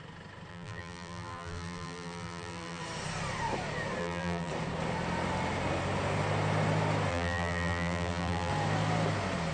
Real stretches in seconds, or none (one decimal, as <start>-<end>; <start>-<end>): 0.0-0.5; 2.8-4.0; 4.5-7.1; 8.5-9.5

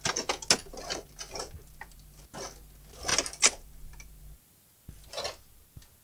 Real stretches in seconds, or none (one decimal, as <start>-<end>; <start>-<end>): 0.0-0.6; 2.2-3.1; 4.2-6.0